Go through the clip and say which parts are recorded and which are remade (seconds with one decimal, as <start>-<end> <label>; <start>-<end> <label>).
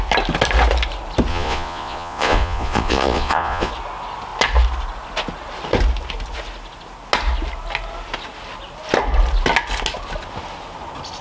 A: 0.0-1.3 recorded; 1.3-3.7 remade; 3.7-11.2 recorded